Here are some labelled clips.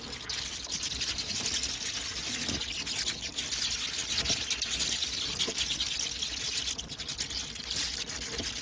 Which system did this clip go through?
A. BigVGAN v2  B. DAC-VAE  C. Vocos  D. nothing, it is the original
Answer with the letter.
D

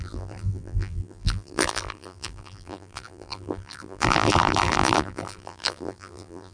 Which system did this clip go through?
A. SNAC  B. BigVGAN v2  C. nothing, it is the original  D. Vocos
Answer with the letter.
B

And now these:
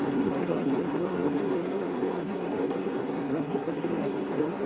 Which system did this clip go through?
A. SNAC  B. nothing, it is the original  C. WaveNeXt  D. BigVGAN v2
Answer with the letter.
A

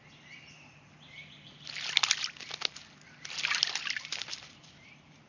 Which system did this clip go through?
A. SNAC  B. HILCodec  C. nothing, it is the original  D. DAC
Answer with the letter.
C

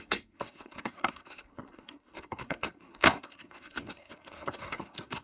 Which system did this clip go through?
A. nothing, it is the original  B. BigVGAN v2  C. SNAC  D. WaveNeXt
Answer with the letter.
C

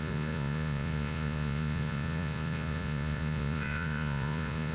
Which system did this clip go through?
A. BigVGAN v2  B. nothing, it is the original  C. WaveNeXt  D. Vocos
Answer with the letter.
D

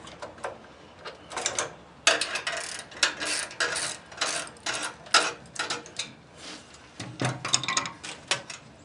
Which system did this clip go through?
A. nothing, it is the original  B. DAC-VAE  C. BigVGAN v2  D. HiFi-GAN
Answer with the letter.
A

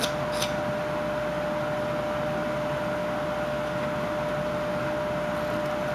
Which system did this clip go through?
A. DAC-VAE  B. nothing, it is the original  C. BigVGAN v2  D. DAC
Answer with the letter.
B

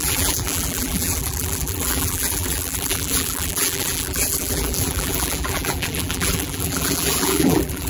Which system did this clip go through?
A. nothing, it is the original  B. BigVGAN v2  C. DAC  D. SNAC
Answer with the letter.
B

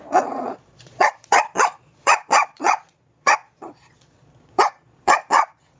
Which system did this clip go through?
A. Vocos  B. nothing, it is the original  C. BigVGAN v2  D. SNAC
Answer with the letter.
A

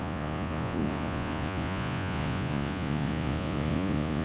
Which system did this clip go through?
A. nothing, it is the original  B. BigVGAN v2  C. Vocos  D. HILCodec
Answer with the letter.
C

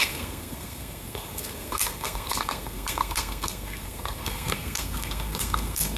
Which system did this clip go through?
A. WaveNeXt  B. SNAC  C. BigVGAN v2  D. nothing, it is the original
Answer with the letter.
B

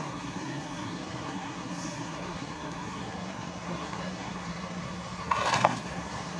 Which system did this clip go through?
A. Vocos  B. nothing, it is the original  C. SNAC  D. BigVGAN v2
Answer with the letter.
C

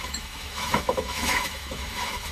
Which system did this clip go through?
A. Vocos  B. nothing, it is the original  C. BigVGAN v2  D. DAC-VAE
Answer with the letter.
D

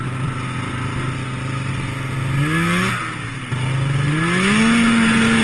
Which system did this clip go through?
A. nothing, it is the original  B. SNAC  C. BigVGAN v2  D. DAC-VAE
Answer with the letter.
A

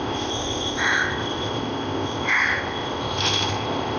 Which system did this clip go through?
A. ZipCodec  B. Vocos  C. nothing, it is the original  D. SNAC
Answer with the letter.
A